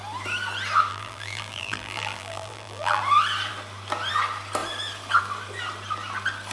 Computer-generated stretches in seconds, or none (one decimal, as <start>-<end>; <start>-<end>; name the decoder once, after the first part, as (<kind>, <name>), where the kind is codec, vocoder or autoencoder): 0.9-3.0 (vocoder, BigVGAN v2)